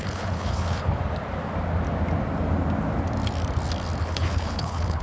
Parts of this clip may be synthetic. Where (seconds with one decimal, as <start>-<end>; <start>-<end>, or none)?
0.0-1.0; 4.0-5.0